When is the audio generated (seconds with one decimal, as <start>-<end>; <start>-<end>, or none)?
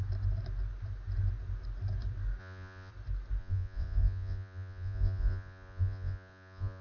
2.4-2.9; 3.4-6.8